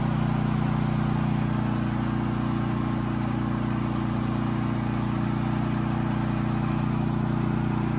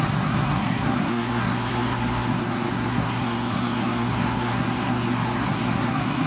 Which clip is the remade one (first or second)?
second